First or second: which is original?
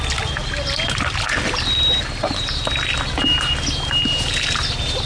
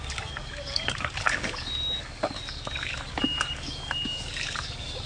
first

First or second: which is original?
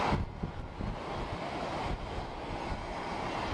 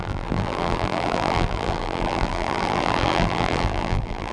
first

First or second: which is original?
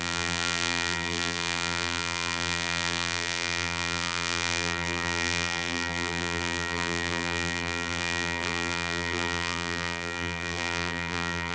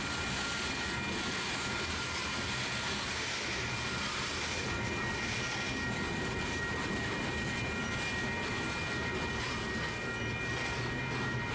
second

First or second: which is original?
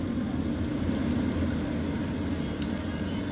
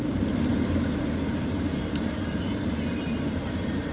first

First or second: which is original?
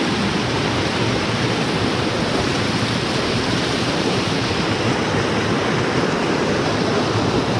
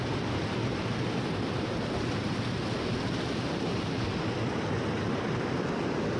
second